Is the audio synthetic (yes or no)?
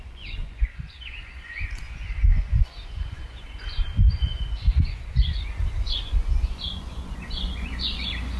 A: yes